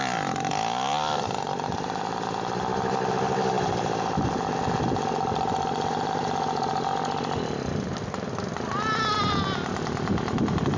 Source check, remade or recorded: recorded